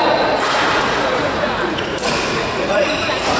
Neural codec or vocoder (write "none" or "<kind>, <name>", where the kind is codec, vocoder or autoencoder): vocoder, Vocos